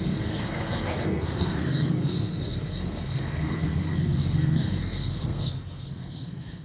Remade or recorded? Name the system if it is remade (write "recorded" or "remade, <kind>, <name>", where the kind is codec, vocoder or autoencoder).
remade, codec, SNAC